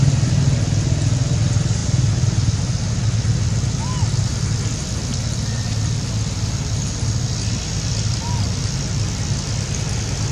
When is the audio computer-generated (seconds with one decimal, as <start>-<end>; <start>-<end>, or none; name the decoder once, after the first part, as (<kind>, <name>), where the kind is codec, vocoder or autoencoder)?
none